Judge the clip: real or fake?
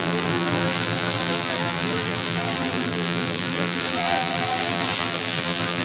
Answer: fake